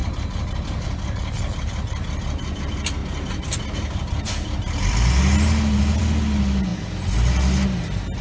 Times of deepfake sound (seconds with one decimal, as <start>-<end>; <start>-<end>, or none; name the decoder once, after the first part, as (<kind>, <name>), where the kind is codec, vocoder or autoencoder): none